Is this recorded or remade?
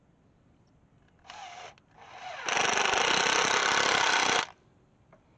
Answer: recorded